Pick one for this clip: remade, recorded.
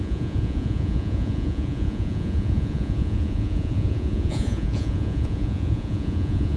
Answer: remade